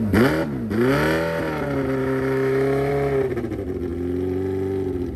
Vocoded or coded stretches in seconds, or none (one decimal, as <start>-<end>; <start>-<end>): 2.0-2.9